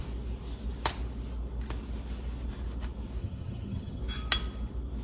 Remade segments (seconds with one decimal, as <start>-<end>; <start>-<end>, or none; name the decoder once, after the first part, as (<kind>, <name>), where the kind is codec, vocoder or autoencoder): 3.2-4.0 (vocoder, HiFi-GAN)